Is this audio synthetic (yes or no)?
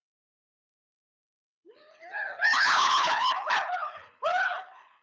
yes